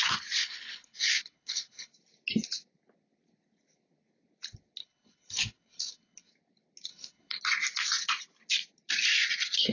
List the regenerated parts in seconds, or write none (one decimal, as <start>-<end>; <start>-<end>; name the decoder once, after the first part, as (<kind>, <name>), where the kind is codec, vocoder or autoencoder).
0.4-1.9 (codec, HILCodec); 4.8-6.3; 6.9-7.4